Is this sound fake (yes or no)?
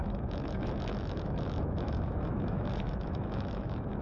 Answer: yes